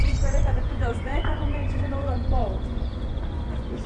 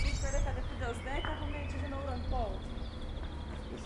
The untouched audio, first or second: second